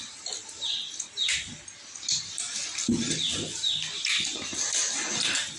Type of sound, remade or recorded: recorded